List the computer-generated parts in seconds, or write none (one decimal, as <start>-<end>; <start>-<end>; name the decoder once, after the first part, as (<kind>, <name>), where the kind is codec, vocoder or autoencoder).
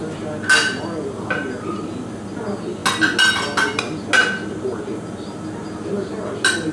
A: none